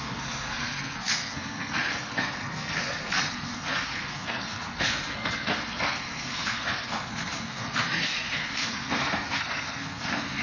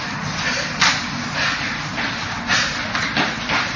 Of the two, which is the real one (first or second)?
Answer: second